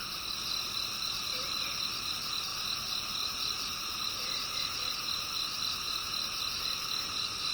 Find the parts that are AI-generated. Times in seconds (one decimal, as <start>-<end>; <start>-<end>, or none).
none